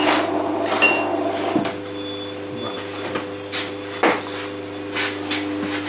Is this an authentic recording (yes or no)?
yes